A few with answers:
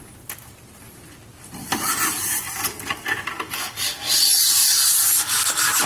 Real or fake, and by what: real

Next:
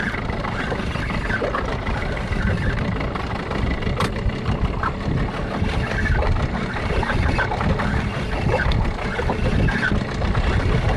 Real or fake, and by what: real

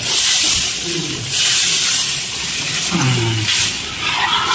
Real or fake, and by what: real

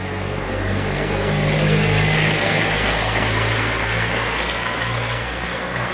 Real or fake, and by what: fake, codec, SNAC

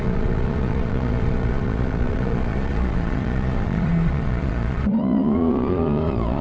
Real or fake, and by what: fake, vocoder, Vocos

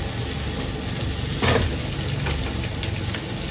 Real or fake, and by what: real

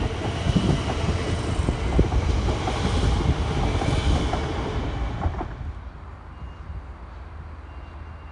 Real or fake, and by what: real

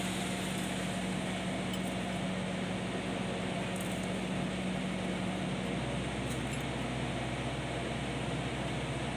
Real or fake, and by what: real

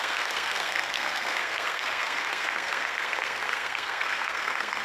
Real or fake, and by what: fake, codec, SNAC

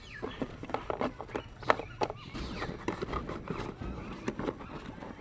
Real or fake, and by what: real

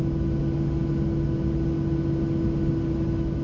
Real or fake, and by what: real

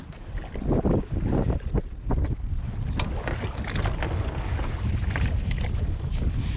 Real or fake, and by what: real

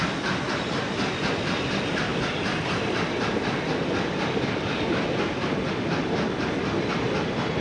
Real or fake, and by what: real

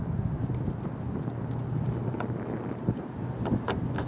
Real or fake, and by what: real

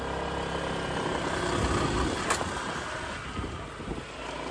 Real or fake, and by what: real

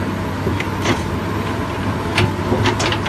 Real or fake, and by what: real